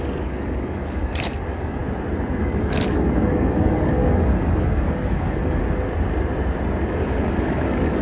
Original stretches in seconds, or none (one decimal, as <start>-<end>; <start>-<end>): 1.8-2.4; 5.6-6.9